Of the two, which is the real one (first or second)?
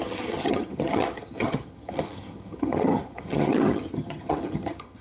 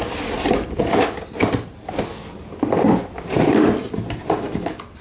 second